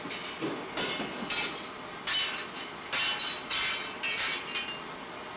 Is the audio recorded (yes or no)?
yes